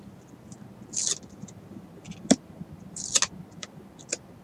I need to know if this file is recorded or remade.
recorded